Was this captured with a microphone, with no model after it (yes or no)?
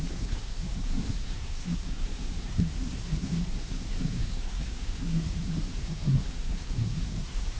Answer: no